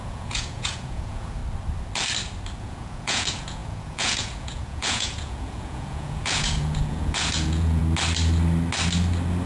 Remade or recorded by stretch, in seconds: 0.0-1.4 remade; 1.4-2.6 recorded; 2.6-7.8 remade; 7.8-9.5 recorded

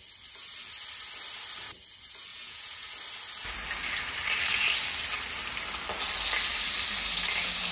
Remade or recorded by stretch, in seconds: 0.0-2.3 recorded; 2.3-2.9 remade; 2.9-7.7 recorded

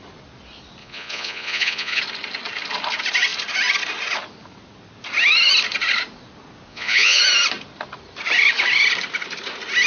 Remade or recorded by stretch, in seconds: 0.0-0.8 recorded; 0.8-2.0 remade; 2.0-6.7 recorded; 6.7-7.2 remade; 7.2-9.9 recorded